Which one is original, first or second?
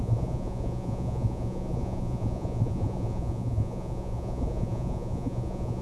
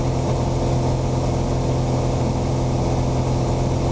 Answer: second